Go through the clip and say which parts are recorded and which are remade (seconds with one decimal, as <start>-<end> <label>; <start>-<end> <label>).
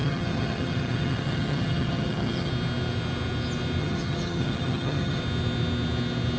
0.0-2.5 remade; 2.5-3.8 recorded; 3.8-5.2 remade; 5.2-6.4 recorded